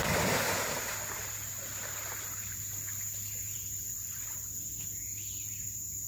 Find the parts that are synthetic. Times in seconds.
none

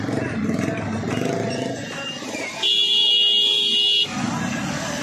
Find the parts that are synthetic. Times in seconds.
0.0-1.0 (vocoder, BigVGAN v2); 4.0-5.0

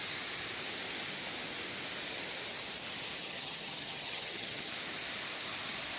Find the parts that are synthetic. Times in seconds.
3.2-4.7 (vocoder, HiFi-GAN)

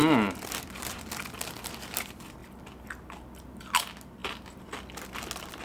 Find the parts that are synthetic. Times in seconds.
none